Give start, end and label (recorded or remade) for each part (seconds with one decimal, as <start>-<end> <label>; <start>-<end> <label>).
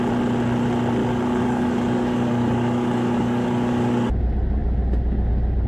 0.0-1.0 recorded; 1.0-4.1 remade; 4.1-5.7 recorded